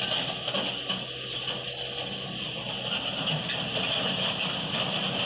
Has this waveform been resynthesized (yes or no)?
no